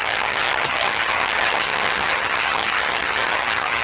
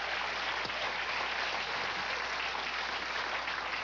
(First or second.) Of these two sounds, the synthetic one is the first